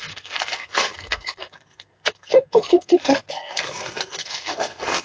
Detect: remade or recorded remade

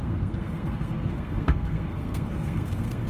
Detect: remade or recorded remade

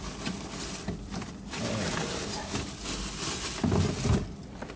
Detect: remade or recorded recorded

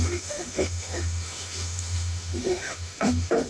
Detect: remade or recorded remade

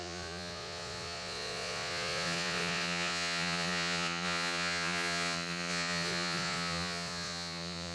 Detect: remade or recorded remade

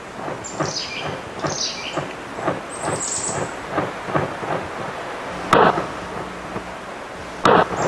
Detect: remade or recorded recorded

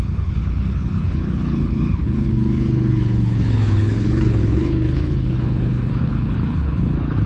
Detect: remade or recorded remade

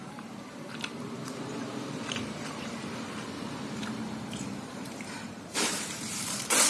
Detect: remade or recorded remade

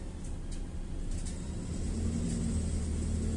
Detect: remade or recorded recorded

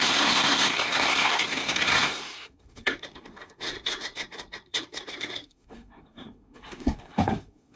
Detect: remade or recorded remade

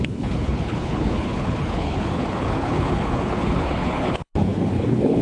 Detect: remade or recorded remade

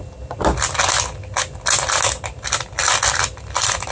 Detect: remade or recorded recorded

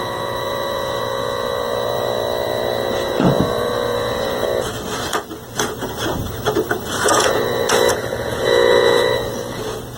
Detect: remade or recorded remade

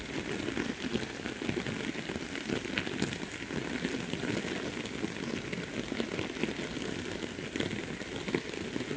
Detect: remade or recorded recorded